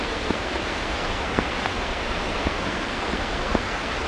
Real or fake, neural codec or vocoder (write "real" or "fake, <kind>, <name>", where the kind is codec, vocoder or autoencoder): fake, codec, SNAC